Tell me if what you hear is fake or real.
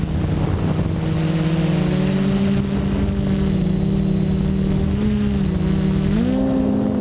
real